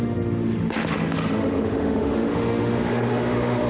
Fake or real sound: fake